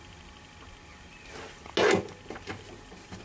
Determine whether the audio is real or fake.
real